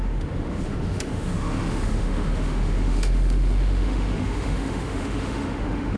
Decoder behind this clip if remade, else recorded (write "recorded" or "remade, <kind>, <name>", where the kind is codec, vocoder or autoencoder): remade, autoencoder, DAC-VAE